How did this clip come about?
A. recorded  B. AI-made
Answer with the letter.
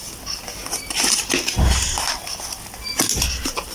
A